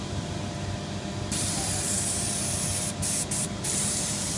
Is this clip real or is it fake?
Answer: fake